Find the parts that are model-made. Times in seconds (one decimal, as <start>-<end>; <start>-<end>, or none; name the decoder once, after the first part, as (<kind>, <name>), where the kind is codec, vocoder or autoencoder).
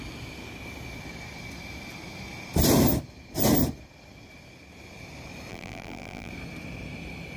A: 5.5-6.3 (vocoder, BigVGAN v2)